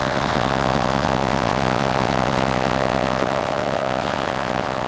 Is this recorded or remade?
remade